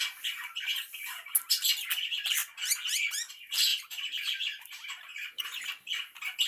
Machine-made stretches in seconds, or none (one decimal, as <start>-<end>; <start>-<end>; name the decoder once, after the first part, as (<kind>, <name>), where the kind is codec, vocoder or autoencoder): 3.7-5.4 (vocoder, BigVGAN v2)